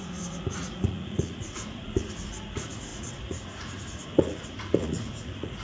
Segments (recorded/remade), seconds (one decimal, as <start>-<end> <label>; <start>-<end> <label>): 0.0-5.6 remade